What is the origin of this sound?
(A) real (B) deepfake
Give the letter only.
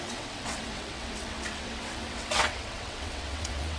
B